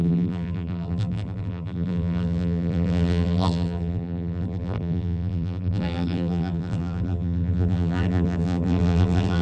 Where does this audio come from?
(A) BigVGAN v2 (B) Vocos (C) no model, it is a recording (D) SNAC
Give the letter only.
A